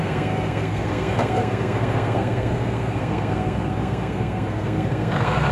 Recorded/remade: remade